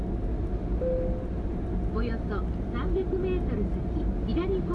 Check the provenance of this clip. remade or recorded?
recorded